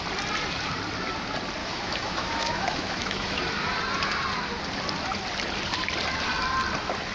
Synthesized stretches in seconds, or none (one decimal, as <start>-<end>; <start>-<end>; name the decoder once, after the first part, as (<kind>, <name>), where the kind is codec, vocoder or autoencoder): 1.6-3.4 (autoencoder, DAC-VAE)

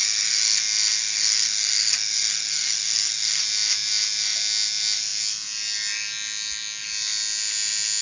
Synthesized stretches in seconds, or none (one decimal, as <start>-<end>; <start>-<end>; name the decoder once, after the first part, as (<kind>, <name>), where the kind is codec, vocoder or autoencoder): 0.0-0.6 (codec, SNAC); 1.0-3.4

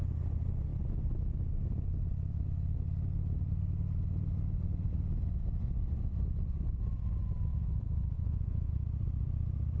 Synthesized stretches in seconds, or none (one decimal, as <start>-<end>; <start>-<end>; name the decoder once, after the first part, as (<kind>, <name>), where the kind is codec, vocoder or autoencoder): 7.5-8.7 (vocoder, Vocos)